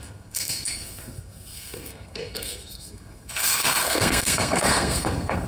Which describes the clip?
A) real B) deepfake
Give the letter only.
B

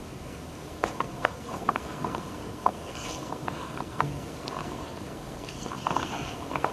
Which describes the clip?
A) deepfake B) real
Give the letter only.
A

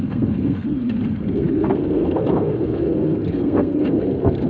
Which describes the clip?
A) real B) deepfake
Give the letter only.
B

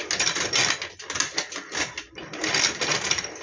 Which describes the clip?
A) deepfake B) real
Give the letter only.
B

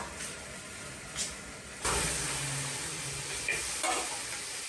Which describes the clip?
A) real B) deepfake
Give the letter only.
A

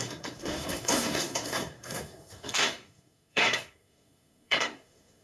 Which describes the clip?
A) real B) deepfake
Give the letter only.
B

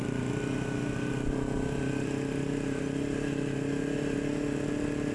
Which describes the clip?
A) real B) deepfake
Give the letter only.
A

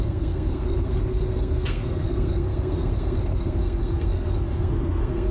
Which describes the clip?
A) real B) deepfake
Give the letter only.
B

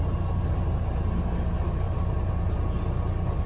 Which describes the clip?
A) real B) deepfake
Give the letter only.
A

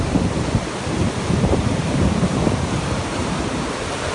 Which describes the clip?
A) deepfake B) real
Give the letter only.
B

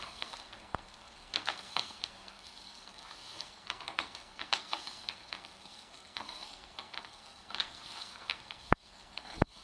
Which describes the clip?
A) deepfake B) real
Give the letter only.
A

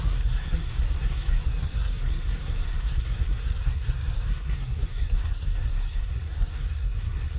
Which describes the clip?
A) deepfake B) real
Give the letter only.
A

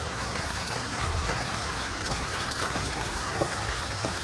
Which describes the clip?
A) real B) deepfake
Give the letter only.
B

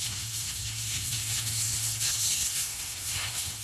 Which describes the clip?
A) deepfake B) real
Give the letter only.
A